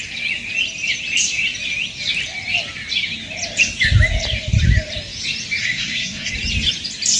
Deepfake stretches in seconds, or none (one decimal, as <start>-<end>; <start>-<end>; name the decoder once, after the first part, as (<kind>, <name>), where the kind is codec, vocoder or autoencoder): 5.6-6.3 (codec, SNAC)